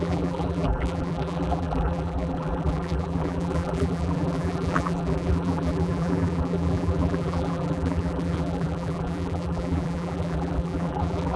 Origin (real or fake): fake